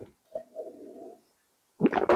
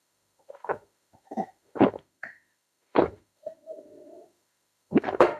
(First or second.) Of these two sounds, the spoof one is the second